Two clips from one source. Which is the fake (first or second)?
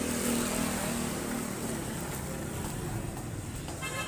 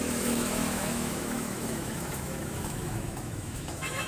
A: second